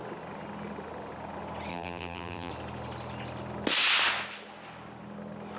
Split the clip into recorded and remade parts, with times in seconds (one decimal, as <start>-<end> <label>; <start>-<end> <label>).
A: 0.0-1.7 recorded; 1.7-2.5 remade; 2.5-5.6 recorded